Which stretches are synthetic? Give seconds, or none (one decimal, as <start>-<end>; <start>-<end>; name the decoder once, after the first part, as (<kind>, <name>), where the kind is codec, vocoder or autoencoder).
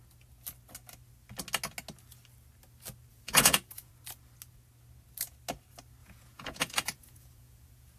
3.1-3.9 (vocoder, Vocos); 6.0-8.0